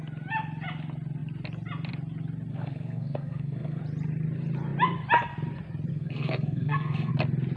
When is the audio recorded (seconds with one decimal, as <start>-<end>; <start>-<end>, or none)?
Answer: 0.0-2.5; 3.8-5.9; 7.1-7.6